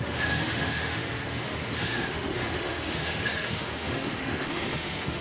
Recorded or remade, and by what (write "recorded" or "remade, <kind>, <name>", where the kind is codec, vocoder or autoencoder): remade, autoencoder, DAC-VAE